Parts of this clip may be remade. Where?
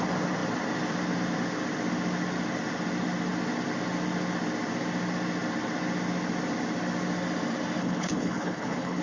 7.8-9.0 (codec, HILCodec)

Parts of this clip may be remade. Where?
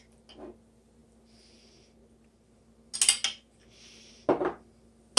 none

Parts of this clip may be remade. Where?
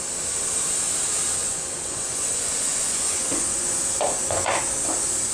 1.4-4.6 (vocoder, Vocos)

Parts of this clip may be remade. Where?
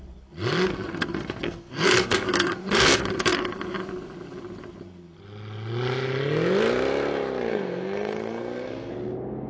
0.7-2.6 (codec, SNAC); 7.5-8.9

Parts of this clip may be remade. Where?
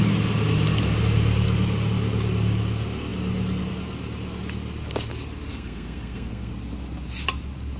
5.5-6.5 (codec, SNAC)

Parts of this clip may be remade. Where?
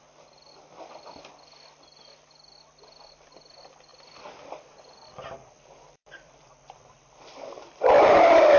3.9-8.6 (vocoder, BigVGAN v2)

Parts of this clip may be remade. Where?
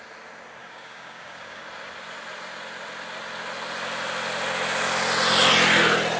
0.6-1.6 (codec, DAC)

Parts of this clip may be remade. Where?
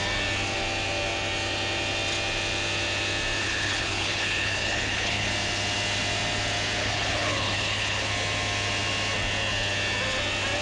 3.4-5.3 (codec, HILCodec); 6.8-8.1